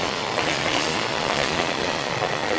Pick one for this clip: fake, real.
fake